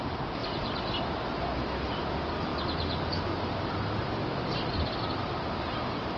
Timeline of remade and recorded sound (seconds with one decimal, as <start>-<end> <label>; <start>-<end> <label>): 0.0-6.2 recorded